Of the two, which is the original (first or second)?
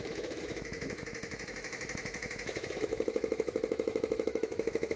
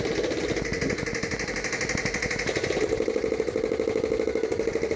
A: second